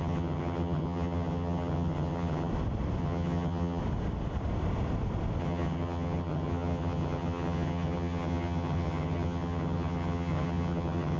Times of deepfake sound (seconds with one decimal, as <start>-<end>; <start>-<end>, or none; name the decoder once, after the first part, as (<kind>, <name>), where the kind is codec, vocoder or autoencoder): 0.0-2.5 (vocoder, HiFi-GAN); 3.0-3.8; 5.4-11.2